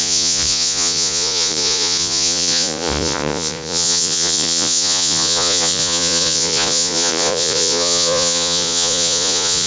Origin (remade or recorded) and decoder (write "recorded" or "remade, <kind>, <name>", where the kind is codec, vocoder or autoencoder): remade, vocoder, Vocos